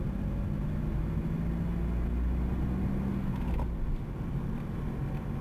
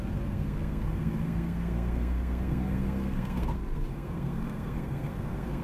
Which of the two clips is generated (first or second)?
second